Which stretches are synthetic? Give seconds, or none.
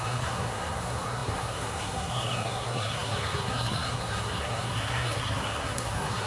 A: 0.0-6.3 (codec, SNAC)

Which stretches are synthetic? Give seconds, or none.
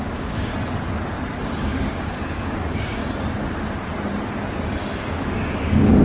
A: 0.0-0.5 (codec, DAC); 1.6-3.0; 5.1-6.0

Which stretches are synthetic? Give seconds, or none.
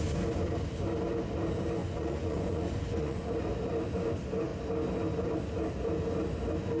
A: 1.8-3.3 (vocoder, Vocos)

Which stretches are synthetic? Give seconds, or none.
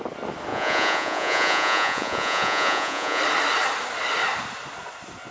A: 0.5-3.2 (vocoder, Vocos)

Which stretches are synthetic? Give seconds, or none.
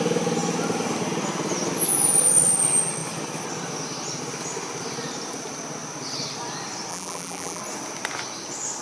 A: 6.9-7.6 (vocoder, BigVGAN v2)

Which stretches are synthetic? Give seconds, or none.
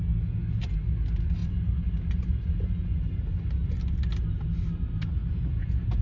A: 5.2-6.0 (vocoder, Vocos)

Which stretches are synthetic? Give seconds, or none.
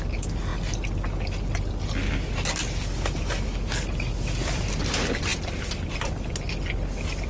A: none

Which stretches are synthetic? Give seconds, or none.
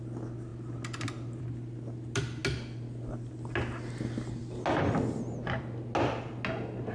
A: none